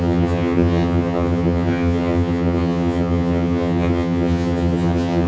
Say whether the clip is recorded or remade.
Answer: remade